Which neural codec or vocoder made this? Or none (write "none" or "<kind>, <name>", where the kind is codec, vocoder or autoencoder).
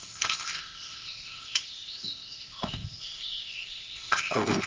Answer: codec, ZipCodec